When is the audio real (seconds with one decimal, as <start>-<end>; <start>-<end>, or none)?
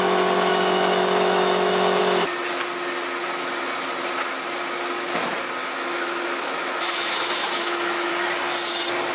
0.0-0.5; 2.0-5.6; 8.1-9.1